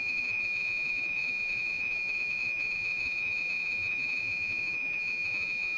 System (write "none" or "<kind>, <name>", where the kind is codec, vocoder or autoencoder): vocoder, Vocos